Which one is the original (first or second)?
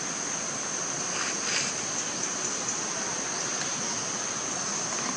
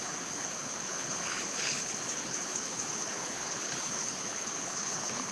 first